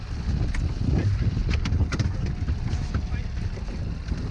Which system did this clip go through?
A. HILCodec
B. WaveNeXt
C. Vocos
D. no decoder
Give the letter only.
D